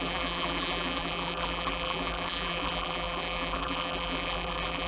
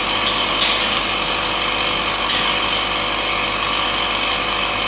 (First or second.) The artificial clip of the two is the first